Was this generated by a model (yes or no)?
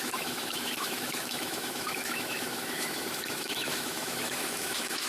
yes